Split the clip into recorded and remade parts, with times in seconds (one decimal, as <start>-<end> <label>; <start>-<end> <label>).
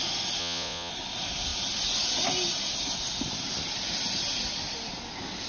0.0-0.4 recorded; 0.4-0.9 remade; 0.9-5.5 recorded